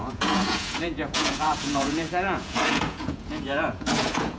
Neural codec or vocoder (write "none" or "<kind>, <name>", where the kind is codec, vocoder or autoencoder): vocoder, Vocos